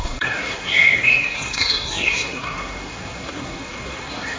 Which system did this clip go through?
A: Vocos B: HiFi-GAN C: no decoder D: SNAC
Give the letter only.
D